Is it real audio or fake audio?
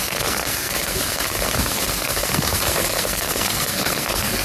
fake